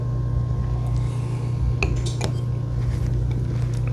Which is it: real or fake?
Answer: real